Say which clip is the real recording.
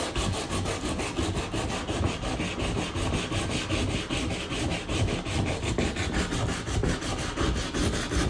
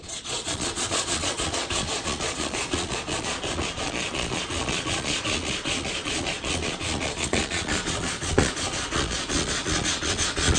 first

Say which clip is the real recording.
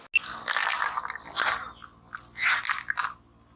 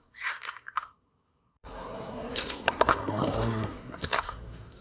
first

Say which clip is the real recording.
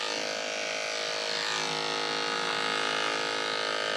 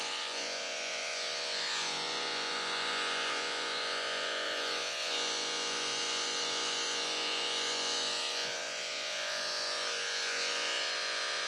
first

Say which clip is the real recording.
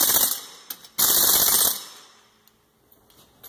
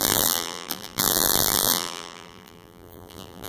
first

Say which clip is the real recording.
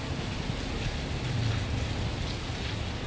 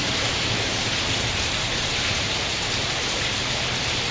first